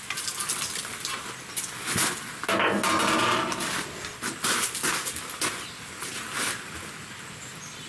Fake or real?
real